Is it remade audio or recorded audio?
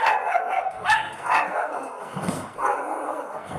remade